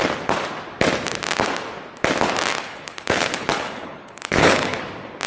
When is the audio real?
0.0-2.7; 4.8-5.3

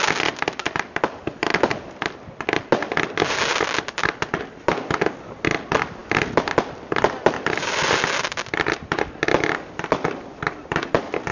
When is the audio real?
0.0-11.3

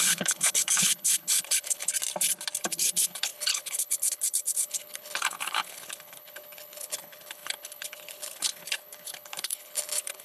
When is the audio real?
1.9-2.6